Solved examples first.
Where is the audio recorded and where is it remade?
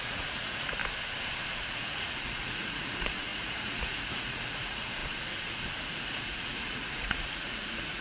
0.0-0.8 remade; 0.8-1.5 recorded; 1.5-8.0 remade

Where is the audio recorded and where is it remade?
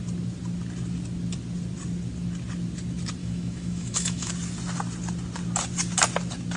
0.0-3.2 recorded; 3.2-4.3 remade; 4.3-6.6 recorded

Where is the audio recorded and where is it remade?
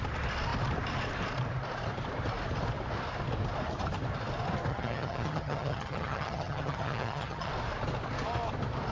0.0-4.7 recorded; 4.7-7.5 remade; 7.5-8.9 recorded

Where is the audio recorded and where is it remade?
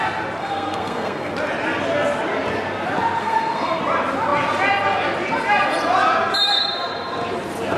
0.0-0.4 recorded; 0.4-1.3 remade; 1.3-3.2 recorded; 3.2-3.8 remade; 3.8-7.8 recorded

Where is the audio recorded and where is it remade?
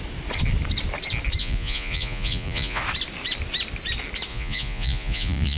0.0-1.4 recorded; 1.4-2.8 remade; 2.8-4.3 recorded; 4.3-5.6 remade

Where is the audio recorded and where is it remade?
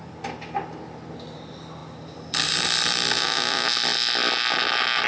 0.0-5.1 recorded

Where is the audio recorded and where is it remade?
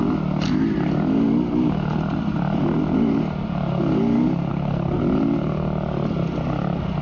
0.0-4.5 recorded; 4.5-5.0 remade; 5.0-7.0 recorded